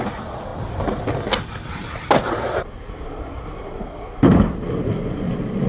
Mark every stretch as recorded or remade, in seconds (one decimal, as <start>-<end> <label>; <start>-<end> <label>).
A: 0.0-5.7 recorded